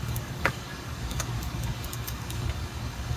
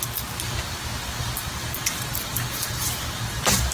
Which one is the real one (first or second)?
second